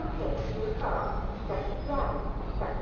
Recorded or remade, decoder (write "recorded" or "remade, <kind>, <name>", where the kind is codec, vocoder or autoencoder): recorded